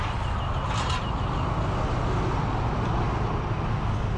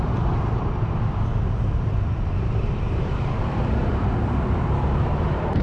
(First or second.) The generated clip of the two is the second